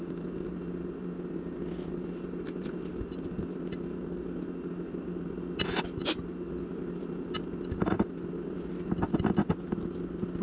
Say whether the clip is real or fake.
real